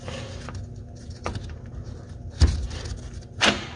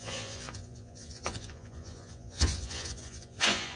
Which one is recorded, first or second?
first